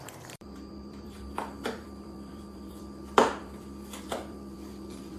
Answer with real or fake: fake